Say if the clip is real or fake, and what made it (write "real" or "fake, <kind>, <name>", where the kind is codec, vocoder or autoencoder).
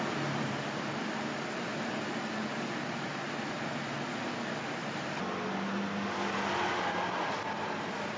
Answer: real